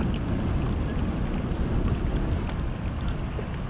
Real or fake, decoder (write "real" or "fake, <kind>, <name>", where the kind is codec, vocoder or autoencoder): real